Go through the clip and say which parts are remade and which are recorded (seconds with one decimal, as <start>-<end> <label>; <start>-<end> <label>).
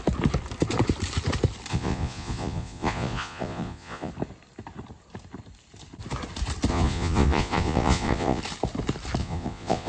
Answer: 0.0-1.7 recorded; 1.7-4.1 remade; 4.1-6.7 recorded; 6.7-8.4 remade; 8.4-9.2 recorded; 9.2-9.9 remade